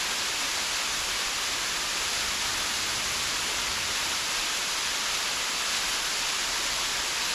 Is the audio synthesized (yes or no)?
no